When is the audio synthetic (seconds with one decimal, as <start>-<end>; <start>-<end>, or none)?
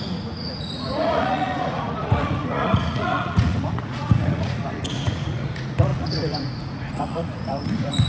0.0-8.1